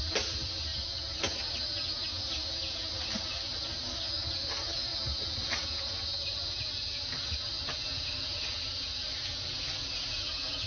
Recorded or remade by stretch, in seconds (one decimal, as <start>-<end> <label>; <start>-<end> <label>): 0.0-10.7 recorded